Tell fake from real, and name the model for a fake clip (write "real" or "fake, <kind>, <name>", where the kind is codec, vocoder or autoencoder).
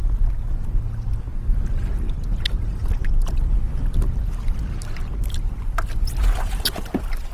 real